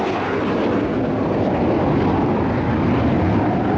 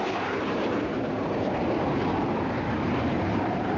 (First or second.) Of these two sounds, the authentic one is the first